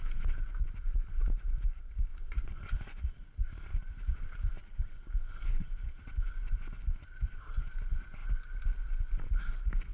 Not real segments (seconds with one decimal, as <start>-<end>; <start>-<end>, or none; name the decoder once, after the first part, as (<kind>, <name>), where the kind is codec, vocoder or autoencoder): 2.1-3.0 (vocoder, Vocos)